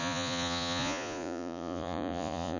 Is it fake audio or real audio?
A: fake